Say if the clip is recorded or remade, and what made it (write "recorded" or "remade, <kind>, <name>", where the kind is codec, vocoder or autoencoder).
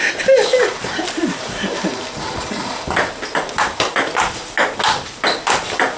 recorded